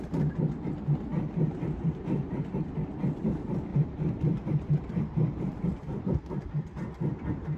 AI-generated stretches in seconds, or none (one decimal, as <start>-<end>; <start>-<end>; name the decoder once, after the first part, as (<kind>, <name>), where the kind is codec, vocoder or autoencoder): 1.1-2.7 (vocoder, BigVGAN v2); 3.7-6.0